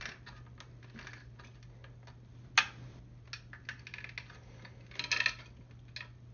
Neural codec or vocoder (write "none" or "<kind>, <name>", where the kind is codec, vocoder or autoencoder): none